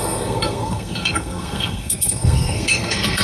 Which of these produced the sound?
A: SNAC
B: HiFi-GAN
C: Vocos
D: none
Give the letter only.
A